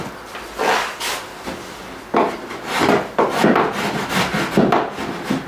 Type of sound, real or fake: real